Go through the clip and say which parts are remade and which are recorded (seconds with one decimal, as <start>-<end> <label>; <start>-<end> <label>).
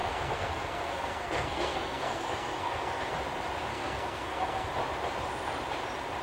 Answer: 0.0-3.1 remade; 3.1-3.7 recorded; 3.7-4.7 remade; 4.7-6.2 recorded